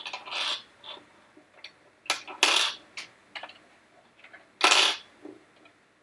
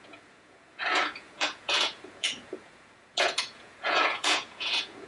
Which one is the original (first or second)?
first